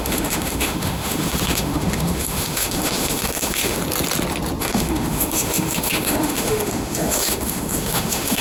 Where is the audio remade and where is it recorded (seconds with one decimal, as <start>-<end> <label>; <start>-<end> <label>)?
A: 0.0-3.8 remade; 3.8-4.6 recorded; 4.6-8.4 remade